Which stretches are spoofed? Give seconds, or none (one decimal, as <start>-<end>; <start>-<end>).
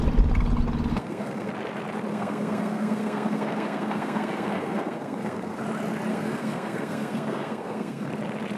0.9-1.5; 2.1-5.6; 6.1-8.1